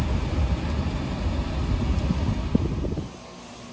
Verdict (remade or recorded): recorded